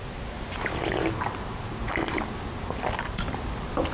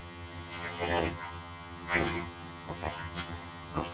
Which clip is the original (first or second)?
first